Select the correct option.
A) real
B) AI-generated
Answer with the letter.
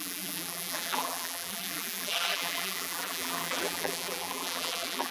B